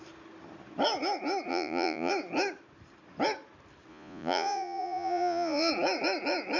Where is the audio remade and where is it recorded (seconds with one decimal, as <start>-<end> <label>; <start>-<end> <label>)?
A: 0.0-1.5 recorded; 1.5-2.1 remade; 2.1-3.9 recorded; 3.9-5.7 remade; 5.7-6.6 recorded